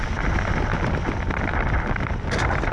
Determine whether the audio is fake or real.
real